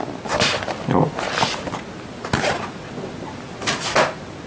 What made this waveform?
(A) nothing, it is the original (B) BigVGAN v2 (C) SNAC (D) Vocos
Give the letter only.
A